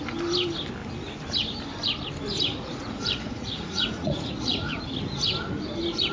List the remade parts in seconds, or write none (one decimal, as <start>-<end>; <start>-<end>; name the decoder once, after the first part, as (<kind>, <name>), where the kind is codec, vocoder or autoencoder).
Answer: 2.5-4.8 (vocoder, Vocos)